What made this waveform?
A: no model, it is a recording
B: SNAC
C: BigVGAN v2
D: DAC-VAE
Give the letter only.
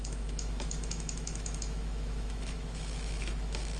D